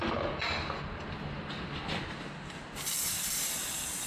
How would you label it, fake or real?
real